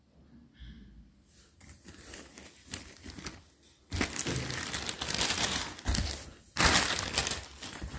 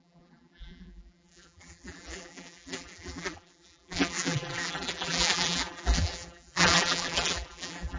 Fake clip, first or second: second